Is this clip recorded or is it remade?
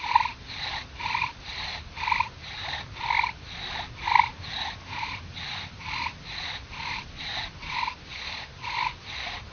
recorded